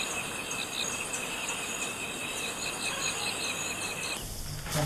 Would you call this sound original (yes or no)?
yes